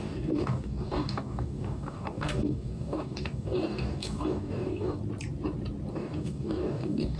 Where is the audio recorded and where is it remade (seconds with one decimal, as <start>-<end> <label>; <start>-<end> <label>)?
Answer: 0.0-5.0 remade; 5.0-5.9 recorded; 5.9-7.2 remade